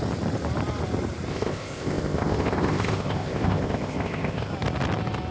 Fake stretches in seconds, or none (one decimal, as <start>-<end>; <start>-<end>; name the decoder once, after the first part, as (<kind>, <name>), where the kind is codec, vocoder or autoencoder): 1.3-4.5 (codec, ZipCodec)